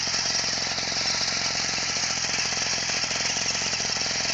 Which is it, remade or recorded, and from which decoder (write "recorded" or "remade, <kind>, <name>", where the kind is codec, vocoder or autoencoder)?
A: recorded